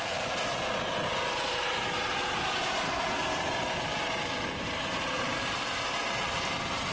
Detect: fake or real real